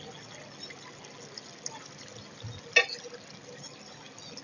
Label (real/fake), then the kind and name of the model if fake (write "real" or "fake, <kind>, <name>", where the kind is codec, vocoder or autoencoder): real